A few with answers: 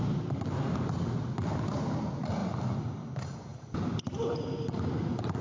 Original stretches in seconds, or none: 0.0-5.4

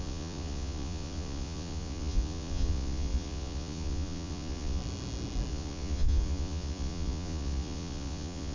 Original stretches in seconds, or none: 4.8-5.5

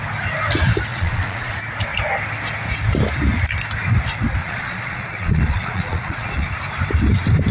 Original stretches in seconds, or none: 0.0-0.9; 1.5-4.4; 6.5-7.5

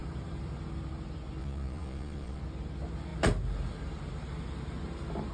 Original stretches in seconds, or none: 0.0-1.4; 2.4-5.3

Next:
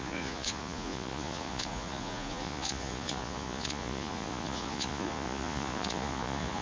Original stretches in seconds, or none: none

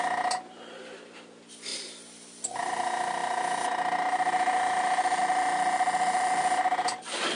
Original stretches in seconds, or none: 0.0-7.4

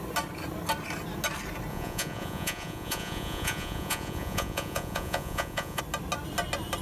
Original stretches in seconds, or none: 0.0-1.7; 5.8-6.8

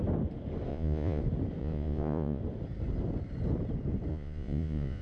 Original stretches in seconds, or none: 0.0-0.7; 1.2-1.6; 2.4-4.1